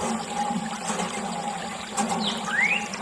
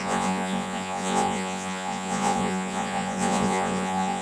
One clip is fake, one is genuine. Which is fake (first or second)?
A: second